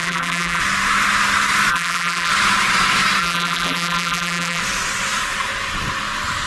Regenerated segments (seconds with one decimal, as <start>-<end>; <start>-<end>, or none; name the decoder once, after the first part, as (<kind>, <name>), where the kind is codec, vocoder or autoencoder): 0.0-0.6 (vocoder, BigVGAN v2); 1.7-2.3; 3.2-4.6